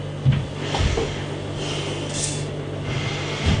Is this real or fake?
real